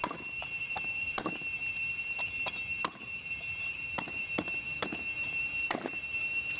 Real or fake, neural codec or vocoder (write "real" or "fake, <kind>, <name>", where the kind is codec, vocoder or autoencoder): fake, vocoder, BigVGAN v2